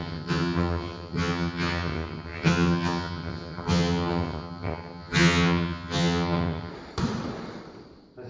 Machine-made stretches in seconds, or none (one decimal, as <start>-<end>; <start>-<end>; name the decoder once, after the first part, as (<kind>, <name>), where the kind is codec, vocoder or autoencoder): 0.0-6.7 (vocoder, HiFi-GAN)